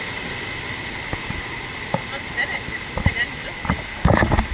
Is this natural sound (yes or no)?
yes